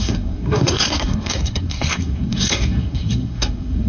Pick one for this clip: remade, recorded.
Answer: remade